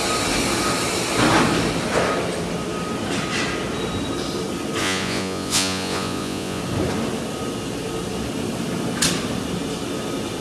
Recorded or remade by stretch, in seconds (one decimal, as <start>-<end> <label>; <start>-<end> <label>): 0.0-4.8 recorded; 4.8-6.6 remade; 6.6-10.4 recorded